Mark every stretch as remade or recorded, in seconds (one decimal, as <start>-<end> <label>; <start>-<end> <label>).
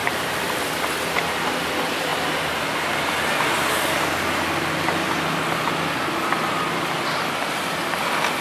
0.0-0.6 remade; 0.6-8.4 recorded